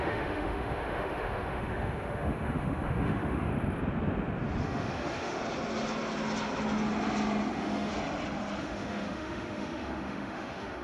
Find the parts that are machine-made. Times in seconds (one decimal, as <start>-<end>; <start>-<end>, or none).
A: 0.0-3.5; 4.6-5.4; 7.5-7.9; 8.6-10.8